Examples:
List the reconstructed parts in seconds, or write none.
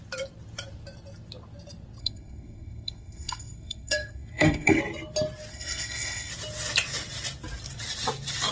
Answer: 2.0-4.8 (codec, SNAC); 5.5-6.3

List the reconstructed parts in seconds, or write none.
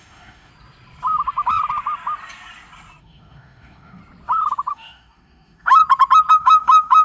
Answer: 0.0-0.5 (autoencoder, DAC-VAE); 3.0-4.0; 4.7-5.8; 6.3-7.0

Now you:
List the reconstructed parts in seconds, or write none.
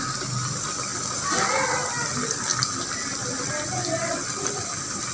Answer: none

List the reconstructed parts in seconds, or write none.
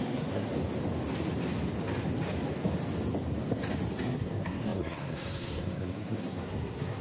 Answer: 0.0-0.5 (codec, SNAC); 4.0-7.0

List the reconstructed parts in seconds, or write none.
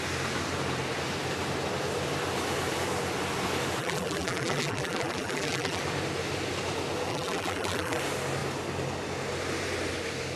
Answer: 3.8-5.8 (vocoder, BigVGAN v2); 7.1-8.0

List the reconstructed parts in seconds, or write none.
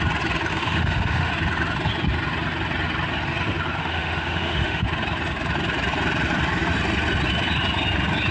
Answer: 0.5-1.3 (autoencoder, DAC-VAE); 3.8-4.8